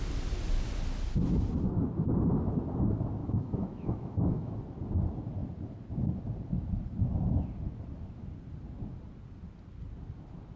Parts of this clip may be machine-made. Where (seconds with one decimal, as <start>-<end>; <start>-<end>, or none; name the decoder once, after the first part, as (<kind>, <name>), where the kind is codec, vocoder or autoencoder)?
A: 3.2-4.5 (autoencoder, DAC-VAE)